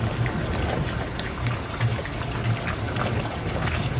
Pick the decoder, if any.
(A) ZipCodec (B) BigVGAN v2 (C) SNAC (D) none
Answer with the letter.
D